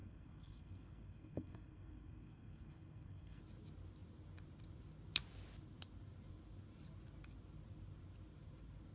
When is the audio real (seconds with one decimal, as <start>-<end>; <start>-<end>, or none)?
3.4-8.9